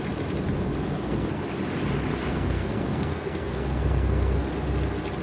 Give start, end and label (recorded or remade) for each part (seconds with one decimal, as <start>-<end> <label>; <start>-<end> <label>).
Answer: 0.0-0.8 recorded; 0.8-1.4 remade; 1.4-2.3 recorded; 2.3-4.4 remade; 4.4-5.2 recorded